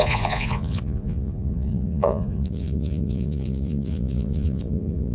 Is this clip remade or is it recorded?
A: remade